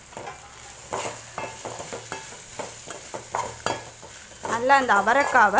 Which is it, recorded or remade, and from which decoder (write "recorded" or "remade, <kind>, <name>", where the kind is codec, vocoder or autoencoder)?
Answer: recorded